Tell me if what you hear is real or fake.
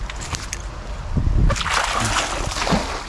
real